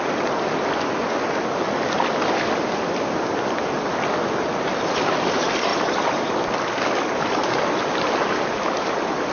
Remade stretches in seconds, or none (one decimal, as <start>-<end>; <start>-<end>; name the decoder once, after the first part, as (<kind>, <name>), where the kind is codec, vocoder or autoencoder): none